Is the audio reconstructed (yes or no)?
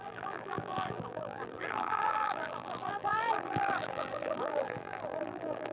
yes